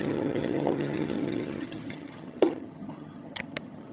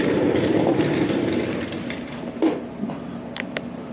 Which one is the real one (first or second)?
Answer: second